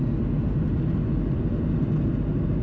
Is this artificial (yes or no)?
no